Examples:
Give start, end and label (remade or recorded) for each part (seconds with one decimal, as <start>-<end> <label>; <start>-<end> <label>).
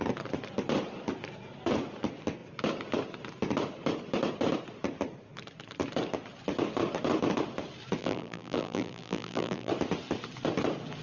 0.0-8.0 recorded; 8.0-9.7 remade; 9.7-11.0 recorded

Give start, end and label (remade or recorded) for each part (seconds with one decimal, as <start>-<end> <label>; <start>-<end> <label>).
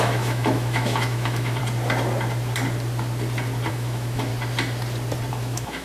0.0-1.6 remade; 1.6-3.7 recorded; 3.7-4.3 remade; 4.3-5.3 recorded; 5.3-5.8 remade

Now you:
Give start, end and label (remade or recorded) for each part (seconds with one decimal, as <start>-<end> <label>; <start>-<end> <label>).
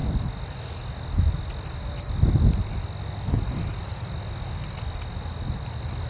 0.0-6.1 recorded